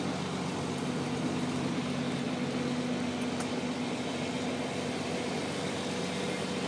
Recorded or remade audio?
recorded